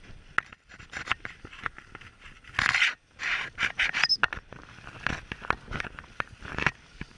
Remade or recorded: recorded